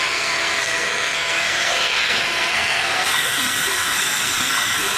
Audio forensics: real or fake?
fake